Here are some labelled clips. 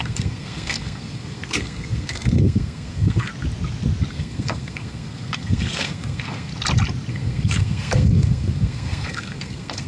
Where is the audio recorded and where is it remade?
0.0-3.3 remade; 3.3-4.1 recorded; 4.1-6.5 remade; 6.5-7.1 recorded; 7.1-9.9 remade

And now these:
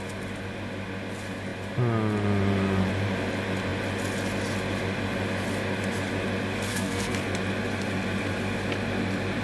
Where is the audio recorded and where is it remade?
0.0-6.7 recorded; 6.7-7.2 remade; 7.2-9.4 recorded